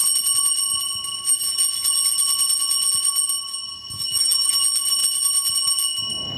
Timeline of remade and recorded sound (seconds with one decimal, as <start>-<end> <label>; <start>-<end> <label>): 0.0-3.5 recorded; 3.5-4.5 remade; 4.5-6.4 recorded